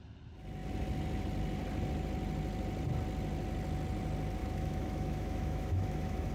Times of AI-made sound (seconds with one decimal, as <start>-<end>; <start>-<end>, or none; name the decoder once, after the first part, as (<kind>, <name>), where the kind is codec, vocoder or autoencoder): 4.4-6.3 (autoencoder, DAC-VAE)